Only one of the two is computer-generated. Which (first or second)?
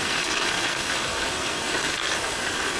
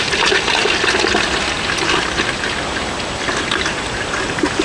first